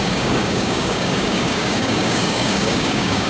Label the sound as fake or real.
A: fake